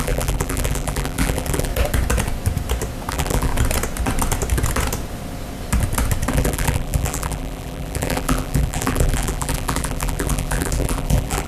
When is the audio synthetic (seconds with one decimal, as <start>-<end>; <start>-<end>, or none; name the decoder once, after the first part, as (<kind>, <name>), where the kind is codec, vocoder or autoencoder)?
0.0-1.7 (vocoder, BigVGAN v2); 3.1-3.5; 6.3-11.5